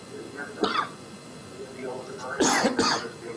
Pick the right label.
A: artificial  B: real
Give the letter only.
A